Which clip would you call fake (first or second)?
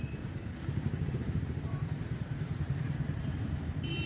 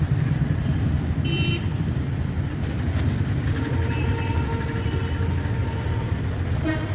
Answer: first